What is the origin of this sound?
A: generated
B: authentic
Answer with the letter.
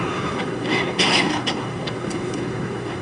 A